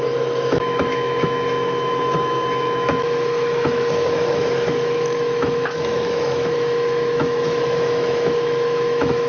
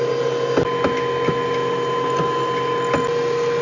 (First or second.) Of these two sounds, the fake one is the first